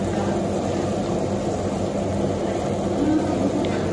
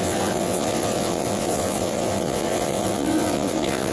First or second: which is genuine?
first